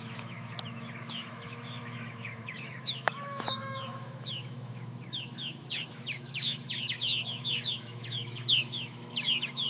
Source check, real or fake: fake